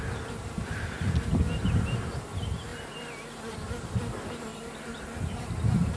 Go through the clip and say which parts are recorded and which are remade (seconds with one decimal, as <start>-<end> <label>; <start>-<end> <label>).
0.0-6.0 recorded